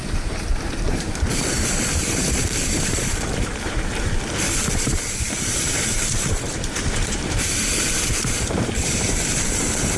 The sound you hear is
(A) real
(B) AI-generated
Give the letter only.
B